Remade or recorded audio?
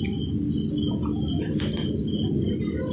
recorded